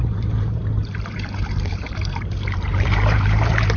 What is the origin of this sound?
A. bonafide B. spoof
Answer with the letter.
B